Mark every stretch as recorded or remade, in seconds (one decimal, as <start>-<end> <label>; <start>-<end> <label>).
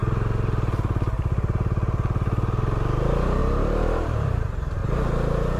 0.0-3.4 recorded; 3.4-4.8 remade; 4.8-5.6 recorded